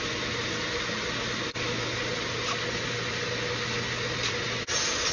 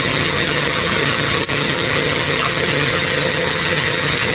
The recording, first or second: first